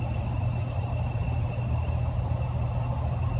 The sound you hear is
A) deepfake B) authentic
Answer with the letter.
B